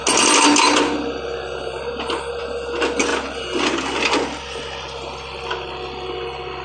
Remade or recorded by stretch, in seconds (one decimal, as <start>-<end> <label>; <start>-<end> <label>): 0.0-6.6 recorded